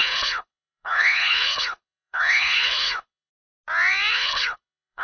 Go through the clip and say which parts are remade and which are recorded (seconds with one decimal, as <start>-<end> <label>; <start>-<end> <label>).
0.0-3.3 remade; 3.3-4.1 recorded; 4.1-5.0 remade

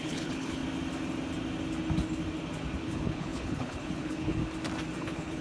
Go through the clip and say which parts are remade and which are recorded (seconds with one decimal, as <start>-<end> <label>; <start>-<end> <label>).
0.0-0.6 remade; 0.6-2.8 recorded; 2.8-4.4 remade; 4.4-5.0 recorded; 5.0-5.4 remade

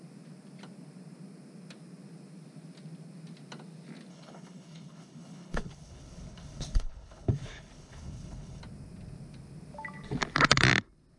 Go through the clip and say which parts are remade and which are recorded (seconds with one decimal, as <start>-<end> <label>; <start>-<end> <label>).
0.0-4.1 recorded; 4.1-8.6 remade; 8.6-11.2 recorded

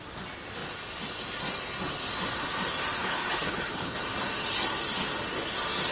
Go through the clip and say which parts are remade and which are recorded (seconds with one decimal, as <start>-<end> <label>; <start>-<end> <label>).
0.0-3.0 recorded; 3.0-4.0 remade; 4.0-5.9 recorded

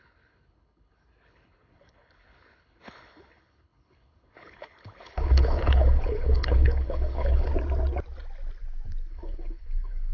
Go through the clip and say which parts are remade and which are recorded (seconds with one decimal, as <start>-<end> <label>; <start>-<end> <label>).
0.0-7.5 remade; 7.5-9.1 recorded; 9.1-10.1 remade

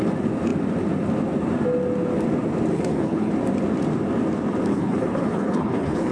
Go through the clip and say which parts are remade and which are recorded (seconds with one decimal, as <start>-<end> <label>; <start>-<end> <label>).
0.0-2.7 recorded; 2.7-3.3 remade; 3.3-4.7 recorded; 4.7-6.1 remade